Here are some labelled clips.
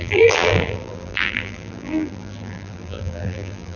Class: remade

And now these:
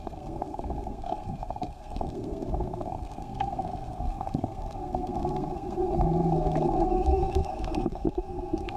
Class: remade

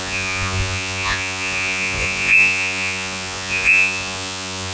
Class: remade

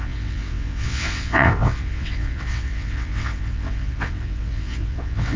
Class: remade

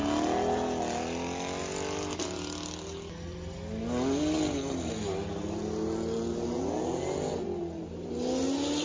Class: recorded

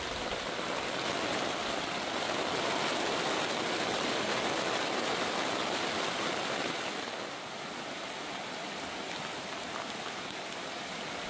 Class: recorded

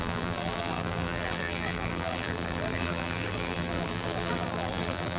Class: remade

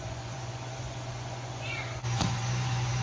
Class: remade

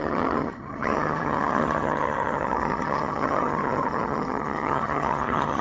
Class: remade